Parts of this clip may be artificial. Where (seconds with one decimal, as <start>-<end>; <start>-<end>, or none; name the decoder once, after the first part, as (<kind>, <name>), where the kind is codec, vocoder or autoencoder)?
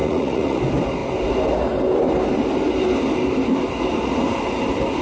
0.0-0.6 (vocoder, Vocos)